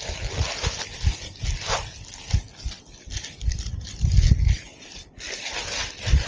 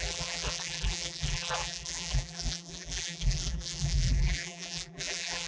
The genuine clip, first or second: first